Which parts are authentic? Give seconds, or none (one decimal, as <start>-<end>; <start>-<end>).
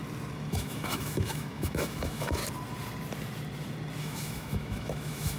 0.0-0.5; 2.4-4.0